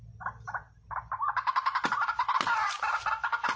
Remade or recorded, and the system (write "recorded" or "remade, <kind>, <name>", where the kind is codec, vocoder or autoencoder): recorded